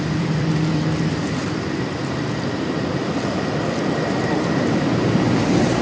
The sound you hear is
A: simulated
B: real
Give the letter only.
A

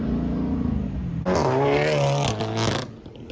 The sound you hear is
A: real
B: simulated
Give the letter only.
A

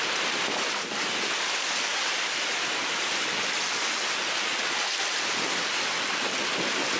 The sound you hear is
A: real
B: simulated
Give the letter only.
A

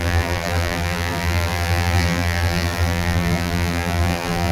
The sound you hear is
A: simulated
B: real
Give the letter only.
A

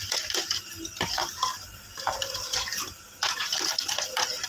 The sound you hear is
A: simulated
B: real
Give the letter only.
A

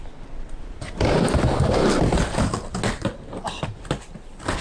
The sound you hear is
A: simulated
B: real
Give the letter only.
B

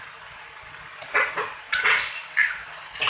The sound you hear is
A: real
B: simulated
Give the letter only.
A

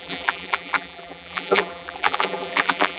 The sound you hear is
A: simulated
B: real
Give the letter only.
A